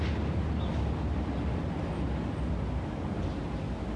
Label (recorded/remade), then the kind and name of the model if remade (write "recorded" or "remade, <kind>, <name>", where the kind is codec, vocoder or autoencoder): recorded